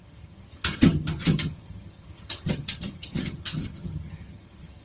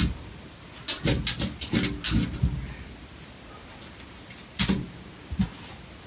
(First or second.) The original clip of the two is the second